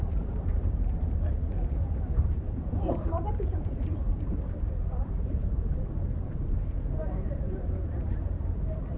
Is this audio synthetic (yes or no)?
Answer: yes